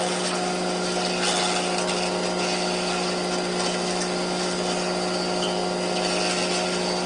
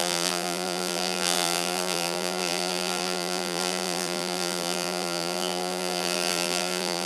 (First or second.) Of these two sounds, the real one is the first